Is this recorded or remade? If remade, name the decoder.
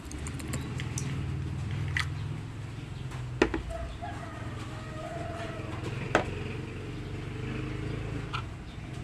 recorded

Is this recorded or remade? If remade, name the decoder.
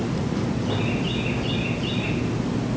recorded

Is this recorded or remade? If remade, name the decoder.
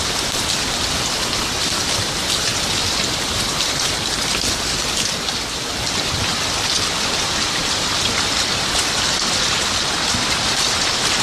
recorded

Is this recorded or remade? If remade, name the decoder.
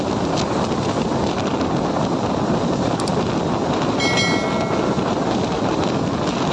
recorded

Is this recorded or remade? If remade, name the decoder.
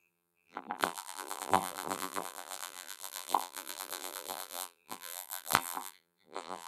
remade, vocoder, BigVGAN v2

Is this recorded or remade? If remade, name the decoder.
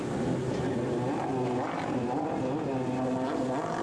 recorded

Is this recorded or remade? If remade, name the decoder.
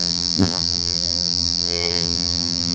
remade, vocoder, BigVGAN v2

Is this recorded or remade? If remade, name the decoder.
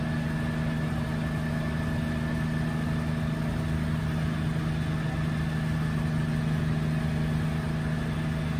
recorded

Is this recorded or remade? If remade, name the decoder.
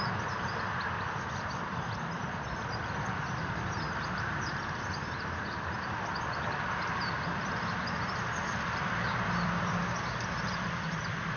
remade, vocoder, BigVGAN v2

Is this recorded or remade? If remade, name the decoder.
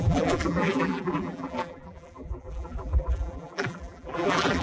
remade, vocoder, BigVGAN v2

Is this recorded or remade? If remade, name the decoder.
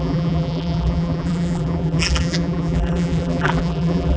remade, vocoder, BigVGAN v2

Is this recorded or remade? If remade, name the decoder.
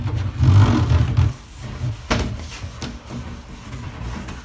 recorded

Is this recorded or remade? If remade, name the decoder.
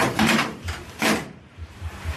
remade, vocoder, BigVGAN v2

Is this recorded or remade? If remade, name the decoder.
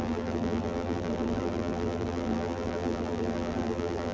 remade, vocoder, BigVGAN v2